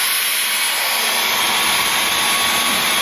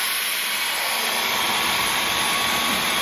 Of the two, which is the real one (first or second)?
first